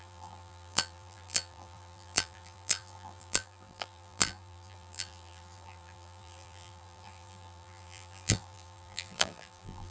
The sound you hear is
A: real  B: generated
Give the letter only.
B